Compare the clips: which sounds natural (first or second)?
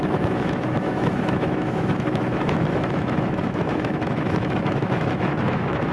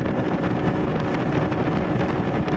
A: second